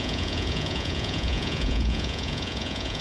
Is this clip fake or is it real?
fake